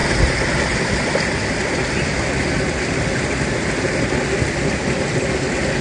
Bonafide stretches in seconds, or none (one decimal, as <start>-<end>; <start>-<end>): 0.0-5.8